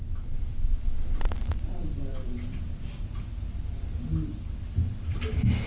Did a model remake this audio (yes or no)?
yes